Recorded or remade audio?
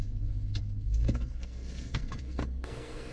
remade